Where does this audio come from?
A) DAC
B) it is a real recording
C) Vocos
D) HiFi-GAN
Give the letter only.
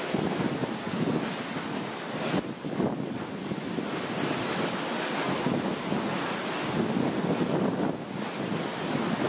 B